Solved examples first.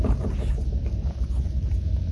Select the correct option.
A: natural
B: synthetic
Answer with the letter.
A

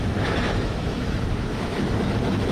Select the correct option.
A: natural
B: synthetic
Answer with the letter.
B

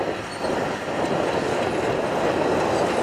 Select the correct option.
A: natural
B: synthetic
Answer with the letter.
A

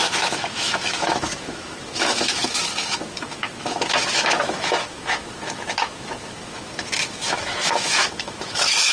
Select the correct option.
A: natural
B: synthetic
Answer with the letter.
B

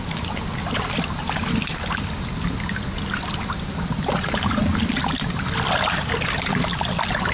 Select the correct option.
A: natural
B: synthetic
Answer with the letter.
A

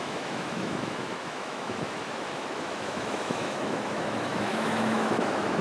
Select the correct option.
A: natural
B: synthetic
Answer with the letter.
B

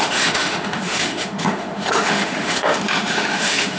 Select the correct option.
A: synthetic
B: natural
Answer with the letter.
A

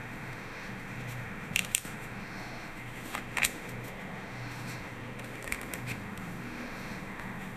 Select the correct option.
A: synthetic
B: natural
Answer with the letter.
A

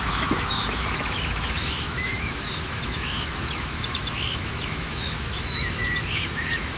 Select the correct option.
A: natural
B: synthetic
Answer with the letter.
B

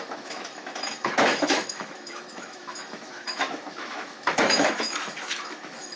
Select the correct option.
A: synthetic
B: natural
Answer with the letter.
A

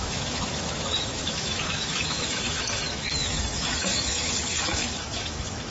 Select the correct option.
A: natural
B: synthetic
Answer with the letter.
B